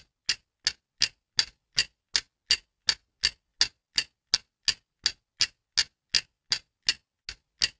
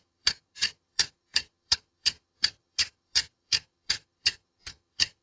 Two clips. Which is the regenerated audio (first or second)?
second